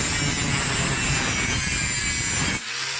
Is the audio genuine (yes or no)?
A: yes